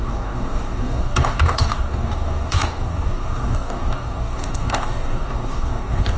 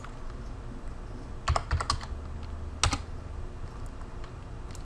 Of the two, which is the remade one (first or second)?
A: first